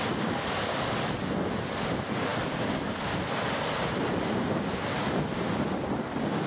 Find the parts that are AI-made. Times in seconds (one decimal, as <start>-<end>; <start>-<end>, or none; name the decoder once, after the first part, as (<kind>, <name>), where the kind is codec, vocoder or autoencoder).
none

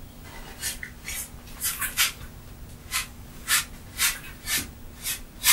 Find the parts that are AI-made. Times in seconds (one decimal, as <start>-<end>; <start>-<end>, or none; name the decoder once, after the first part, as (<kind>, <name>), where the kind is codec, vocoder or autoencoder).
1.7-2.2 (codec, DAC); 2.9-3.6

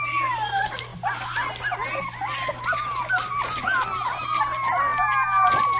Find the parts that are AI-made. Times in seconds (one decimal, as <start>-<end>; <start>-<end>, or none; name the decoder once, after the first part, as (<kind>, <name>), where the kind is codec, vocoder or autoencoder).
none